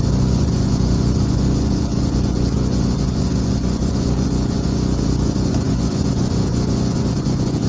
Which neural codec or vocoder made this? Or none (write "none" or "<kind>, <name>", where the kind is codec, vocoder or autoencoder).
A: vocoder, Vocos